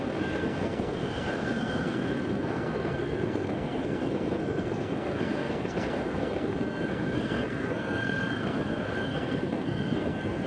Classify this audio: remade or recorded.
remade